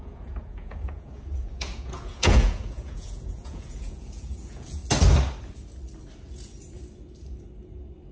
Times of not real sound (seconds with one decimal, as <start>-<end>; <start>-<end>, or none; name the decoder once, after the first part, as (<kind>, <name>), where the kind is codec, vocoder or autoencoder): 0.0-4.8 (vocoder, Vocos)